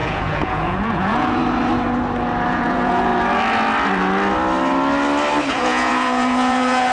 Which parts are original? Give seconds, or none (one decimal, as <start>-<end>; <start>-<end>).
1.4-2.5; 3.1-5.5

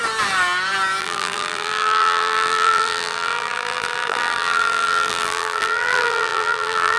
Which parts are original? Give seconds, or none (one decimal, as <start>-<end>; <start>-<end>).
0.0-1.0

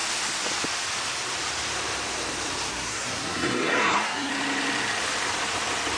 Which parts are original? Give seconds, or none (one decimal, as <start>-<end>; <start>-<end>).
0.0-2.7; 4.3-6.0

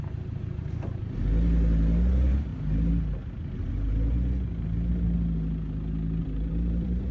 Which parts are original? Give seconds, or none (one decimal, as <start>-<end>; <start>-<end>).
1.0-2.1; 2.5-6.2

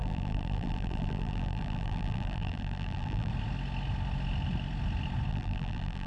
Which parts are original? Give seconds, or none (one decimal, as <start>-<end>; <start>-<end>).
3.3-5.3